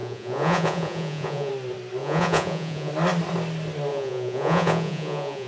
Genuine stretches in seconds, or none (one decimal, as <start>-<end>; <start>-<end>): 1.5-2.0; 2.9-3.9